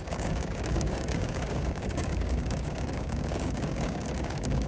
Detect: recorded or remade remade